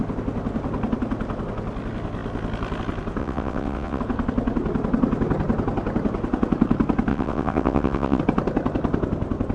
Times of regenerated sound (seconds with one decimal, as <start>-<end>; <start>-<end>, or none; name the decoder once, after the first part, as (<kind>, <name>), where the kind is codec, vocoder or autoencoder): 3.2-4.0 (vocoder, WaveNeXt); 7.1-8.2